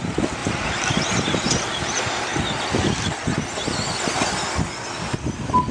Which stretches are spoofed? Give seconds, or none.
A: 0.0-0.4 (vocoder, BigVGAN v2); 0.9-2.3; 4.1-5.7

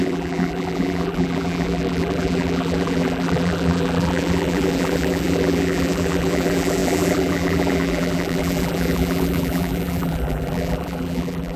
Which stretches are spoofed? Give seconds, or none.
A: 0.0-11.6 (vocoder, BigVGAN v2)